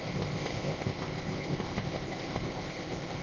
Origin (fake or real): fake